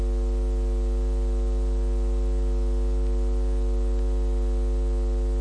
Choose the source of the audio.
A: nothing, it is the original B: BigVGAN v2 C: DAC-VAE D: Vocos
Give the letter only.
A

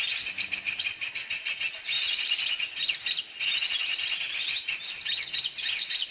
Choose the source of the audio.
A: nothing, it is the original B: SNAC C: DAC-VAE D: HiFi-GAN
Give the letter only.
A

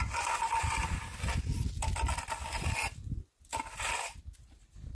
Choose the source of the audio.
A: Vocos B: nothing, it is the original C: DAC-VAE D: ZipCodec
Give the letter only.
B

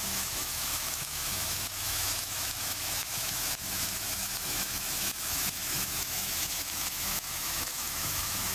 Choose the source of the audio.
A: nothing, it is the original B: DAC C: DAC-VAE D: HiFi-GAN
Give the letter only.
C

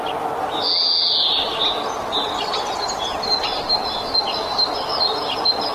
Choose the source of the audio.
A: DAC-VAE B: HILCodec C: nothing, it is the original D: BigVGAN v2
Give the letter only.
C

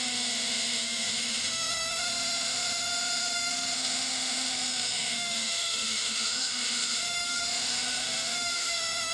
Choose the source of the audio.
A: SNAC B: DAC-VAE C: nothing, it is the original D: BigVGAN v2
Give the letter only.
B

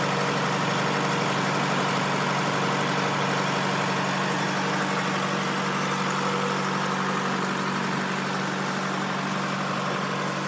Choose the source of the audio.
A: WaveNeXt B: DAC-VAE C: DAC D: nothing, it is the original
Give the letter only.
D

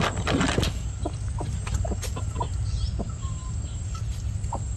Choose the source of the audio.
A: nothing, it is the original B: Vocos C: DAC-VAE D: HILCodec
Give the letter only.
A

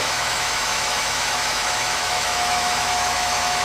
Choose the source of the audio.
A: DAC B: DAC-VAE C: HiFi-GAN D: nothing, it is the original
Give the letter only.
B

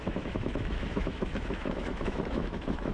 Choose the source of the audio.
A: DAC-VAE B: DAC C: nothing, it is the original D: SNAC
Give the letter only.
A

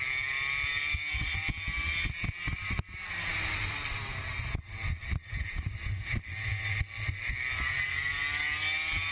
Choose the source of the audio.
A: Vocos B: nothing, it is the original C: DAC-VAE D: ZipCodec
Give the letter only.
B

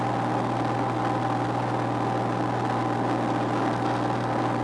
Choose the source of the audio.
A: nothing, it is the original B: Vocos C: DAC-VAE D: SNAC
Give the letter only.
A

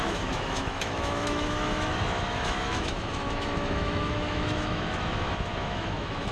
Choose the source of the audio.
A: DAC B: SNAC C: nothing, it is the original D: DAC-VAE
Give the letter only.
D